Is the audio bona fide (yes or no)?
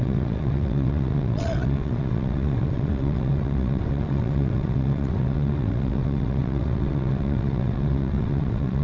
no